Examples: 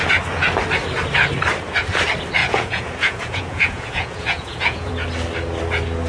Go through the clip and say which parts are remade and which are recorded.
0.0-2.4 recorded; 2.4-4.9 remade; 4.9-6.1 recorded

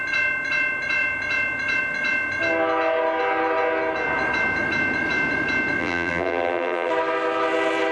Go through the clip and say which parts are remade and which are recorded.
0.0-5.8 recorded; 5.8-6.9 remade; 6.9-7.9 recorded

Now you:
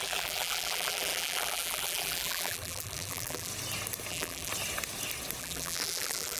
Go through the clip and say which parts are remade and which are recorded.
0.0-3.5 remade; 3.5-4.1 recorded; 4.1-4.5 remade; 4.5-5.4 recorded; 5.4-6.4 remade

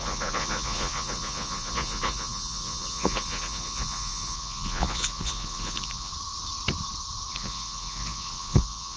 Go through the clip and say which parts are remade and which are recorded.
0.0-6.1 remade; 6.1-7.3 recorded; 7.3-9.0 remade

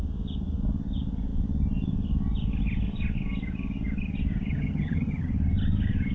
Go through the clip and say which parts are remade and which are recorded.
0.0-4.5 recorded; 4.5-5.3 remade; 5.3-6.1 recorded

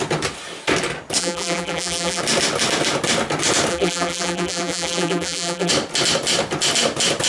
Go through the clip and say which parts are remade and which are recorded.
0.0-1.2 recorded; 1.2-2.2 remade; 2.2-3.7 recorded; 3.7-5.7 remade; 5.7-7.3 recorded

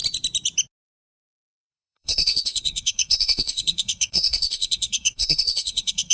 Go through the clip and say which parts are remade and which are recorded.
0.0-1.3 recorded; 1.3-6.1 remade